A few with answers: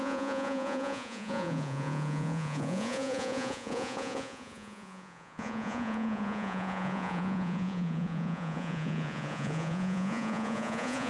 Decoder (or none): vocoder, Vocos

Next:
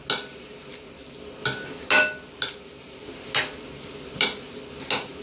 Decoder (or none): none